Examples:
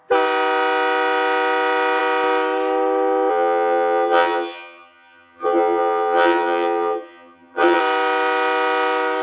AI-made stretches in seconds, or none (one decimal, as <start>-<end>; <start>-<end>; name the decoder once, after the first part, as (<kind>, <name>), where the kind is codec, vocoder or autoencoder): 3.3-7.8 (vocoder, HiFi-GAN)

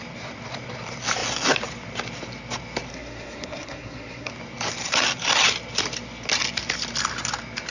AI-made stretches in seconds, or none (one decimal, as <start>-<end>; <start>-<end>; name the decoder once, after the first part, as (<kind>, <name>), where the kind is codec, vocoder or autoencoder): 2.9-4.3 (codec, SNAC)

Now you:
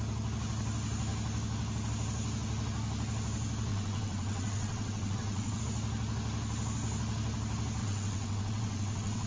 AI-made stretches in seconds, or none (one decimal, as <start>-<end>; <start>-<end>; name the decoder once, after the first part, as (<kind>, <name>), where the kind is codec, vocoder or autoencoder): 3.7-5.6 (vocoder, WaveNeXt); 7.8-9.3